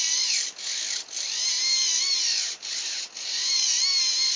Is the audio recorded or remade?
recorded